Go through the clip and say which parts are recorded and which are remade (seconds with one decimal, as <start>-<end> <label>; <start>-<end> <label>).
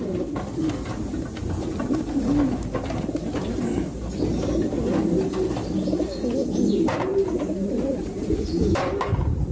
0.0-7.1 recorded; 7.1-9.5 remade